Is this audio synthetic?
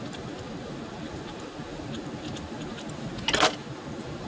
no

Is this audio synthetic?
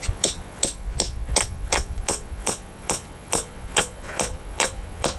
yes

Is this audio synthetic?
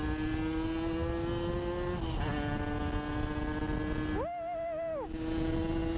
no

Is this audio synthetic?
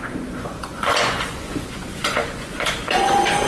yes